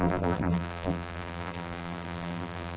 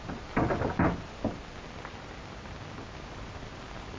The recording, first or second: second